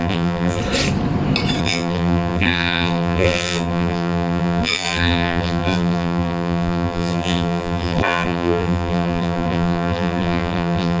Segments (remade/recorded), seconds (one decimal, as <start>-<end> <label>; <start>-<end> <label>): 0.0-0.6 remade; 0.6-1.6 recorded; 1.6-11.0 remade